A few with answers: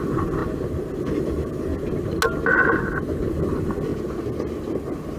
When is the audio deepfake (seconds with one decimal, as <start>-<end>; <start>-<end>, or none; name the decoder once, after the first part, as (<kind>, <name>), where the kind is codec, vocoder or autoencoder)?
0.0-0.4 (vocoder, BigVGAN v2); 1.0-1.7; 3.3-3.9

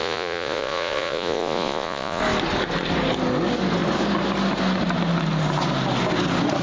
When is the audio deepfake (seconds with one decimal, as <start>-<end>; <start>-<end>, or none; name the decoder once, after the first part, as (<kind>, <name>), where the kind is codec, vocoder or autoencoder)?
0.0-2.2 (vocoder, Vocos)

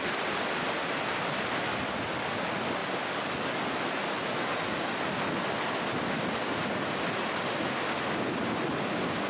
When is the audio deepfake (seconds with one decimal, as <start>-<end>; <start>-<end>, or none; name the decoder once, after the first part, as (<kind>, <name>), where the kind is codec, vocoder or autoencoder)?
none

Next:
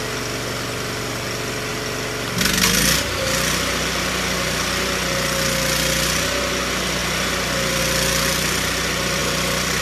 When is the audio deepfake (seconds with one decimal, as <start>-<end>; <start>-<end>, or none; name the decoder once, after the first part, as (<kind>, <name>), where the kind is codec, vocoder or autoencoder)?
none

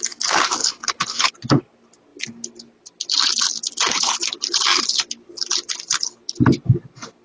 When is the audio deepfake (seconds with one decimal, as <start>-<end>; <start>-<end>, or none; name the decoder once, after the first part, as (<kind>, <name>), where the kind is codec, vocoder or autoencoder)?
0.6-1.3 (codec, HILCodec)